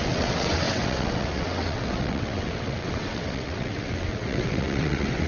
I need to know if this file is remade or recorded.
remade